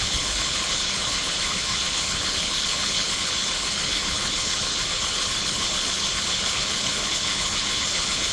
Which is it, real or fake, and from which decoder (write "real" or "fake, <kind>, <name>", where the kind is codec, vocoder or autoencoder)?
fake, codec, HILCodec